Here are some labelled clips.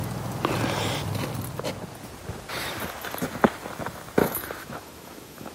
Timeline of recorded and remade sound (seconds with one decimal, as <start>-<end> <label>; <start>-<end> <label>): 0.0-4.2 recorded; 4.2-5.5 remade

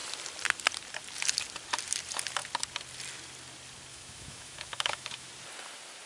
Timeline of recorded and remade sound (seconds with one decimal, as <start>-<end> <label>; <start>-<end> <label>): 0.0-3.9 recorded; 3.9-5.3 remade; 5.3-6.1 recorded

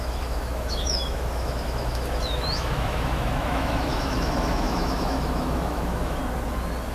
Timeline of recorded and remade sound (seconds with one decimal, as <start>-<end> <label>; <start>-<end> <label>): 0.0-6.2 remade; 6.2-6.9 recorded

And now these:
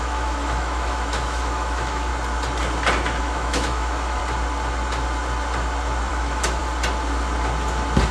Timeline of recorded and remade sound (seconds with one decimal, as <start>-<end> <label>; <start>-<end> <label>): 0.0-2.1 remade; 2.1-3.2 recorded; 3.2-4.2 remade; 4.2-6.1 recorded; 6.1-6.6 remade; 6.6-8.1 recorded

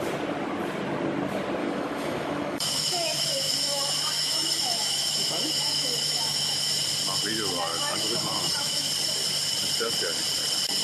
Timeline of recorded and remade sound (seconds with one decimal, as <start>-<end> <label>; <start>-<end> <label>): 0.0-1.6 recorded; 1.6-6.7 remade; 6.7-7.7 recorded; 7.7-8.9 remade; 8.9-10.8 recorded

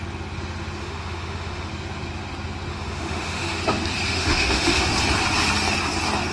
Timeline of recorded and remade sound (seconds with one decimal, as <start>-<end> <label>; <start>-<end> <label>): 0.0-0.8 recorded; 0.8-1.7 remade; 1.7-2.7 recorded; 2.7-3.6 remade; 3.6-4.1 recorded; 4.1-4.9 remade; 4.9-6.3 recorded

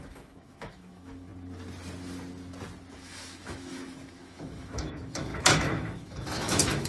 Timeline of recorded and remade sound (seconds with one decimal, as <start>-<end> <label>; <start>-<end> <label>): 0.0-1.3 remade; 1.3-2.9 recorded; 2.9-6.9 remade